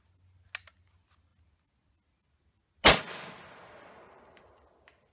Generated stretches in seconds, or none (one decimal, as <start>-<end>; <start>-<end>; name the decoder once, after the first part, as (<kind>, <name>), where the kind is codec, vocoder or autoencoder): none